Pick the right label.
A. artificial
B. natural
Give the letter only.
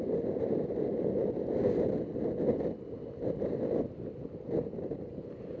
B